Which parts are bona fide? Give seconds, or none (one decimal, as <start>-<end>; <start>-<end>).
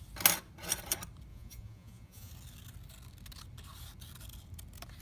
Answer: 0.0-1.3; 2.3-5.0